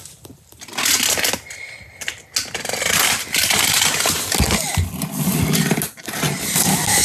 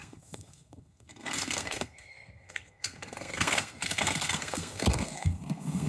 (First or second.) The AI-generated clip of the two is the second